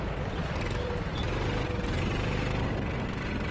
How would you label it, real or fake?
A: real